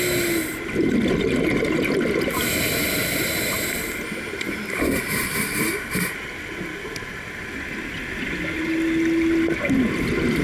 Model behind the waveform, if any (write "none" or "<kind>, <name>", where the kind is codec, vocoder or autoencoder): none